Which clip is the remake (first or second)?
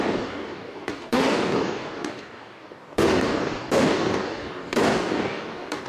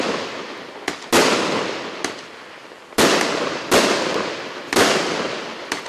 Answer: first